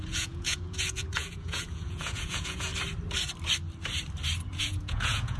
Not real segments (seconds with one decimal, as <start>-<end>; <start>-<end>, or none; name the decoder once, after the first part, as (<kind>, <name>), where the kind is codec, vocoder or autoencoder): 0.0-2.7 (vocoder, Vocos); 4.6-5.4